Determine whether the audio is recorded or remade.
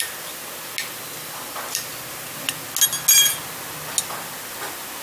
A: recorded